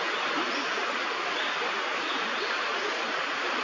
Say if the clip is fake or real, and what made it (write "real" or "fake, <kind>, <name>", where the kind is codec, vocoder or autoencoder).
real